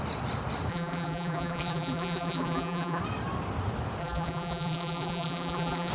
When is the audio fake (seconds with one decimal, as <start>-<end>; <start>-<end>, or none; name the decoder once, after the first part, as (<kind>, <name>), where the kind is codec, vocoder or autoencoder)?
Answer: 0.7-3.0 (vocoder, BigVGAN v2); 4.0-5.9